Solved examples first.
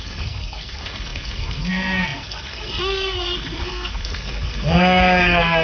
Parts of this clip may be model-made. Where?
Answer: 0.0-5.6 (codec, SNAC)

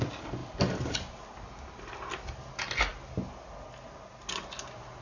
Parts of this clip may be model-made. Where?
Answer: none

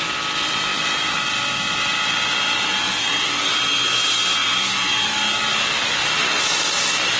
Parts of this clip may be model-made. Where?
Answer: none

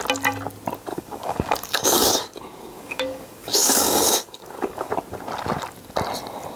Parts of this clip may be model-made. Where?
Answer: 0.9-4.9 (codec, DAC)

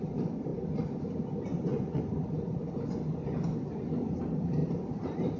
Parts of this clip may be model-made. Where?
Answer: 1.5-2.0 (vocoder, Vocos)

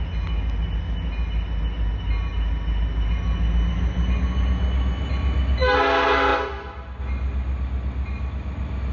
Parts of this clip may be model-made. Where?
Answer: none

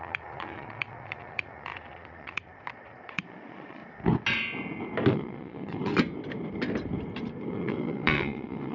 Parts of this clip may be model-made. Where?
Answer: 0.0-3.8 (vocoder, Vocos); 5.1-5.9; 7.5-8.7